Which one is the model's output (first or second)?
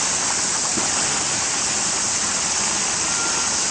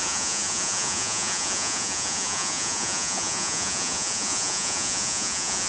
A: second